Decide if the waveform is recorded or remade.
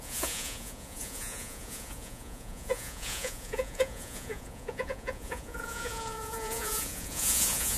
remade